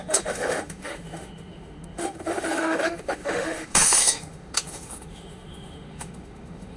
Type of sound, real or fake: fake